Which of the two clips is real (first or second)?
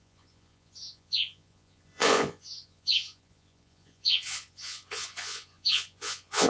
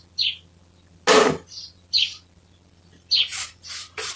second